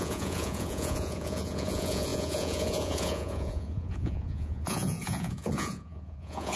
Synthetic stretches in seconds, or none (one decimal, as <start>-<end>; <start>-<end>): 0.0-6.6